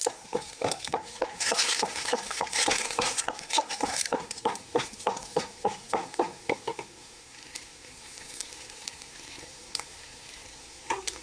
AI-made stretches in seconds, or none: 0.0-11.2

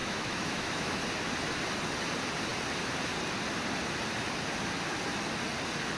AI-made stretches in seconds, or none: 0.0-1.0

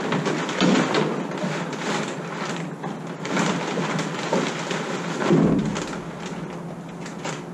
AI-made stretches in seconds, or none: none

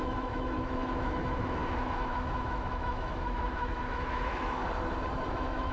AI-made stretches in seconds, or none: 0.0-4.6; 5.3-5.7